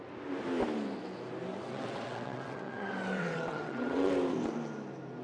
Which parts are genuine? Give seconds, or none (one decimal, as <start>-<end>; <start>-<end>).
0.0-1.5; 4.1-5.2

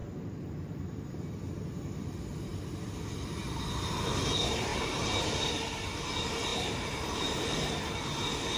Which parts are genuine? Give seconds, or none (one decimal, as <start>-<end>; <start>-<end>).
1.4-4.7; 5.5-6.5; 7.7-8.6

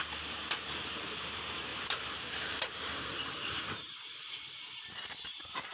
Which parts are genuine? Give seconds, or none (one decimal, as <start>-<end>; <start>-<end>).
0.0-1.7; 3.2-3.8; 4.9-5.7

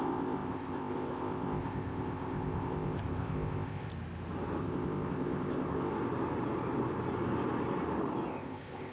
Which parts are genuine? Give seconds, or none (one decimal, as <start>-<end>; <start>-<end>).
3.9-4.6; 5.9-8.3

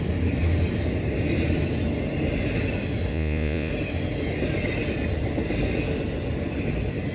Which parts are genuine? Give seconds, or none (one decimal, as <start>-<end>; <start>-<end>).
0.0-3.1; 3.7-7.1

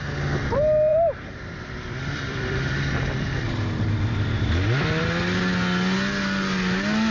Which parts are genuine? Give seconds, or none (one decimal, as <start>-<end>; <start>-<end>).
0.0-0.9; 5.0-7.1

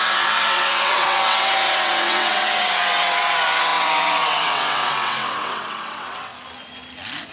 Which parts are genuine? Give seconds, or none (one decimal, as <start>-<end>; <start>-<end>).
6.3-7.3